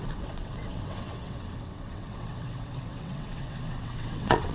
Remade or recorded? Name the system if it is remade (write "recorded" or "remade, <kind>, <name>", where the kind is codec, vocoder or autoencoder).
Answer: remade, vocoder, WaveNeXt